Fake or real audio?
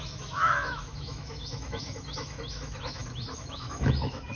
fake